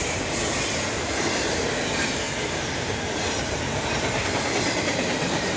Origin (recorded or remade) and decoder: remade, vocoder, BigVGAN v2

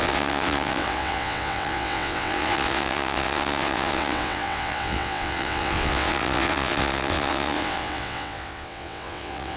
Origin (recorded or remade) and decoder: remade, vocoder, WaveNeXt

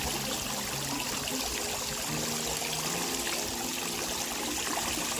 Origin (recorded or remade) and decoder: recorded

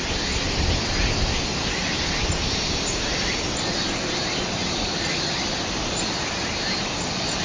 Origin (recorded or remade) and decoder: recorded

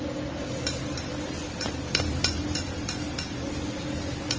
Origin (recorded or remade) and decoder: recorded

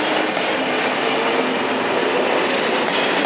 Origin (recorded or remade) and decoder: recorded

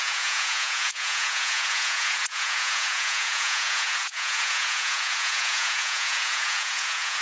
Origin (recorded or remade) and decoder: remade, vocoder, Vocos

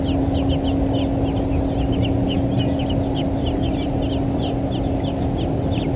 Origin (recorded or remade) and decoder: recorded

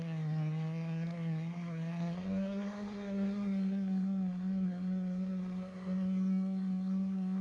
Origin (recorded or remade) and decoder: remade, codec, SNAC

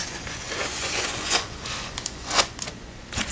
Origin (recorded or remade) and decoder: remade, vocoder, Vocos